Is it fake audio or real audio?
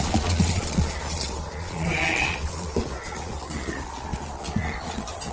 fake